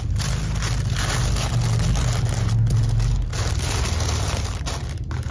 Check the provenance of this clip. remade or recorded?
recorded